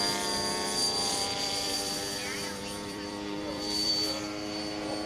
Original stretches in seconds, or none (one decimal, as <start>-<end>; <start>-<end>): 0.0-0.8; 3.9-5.1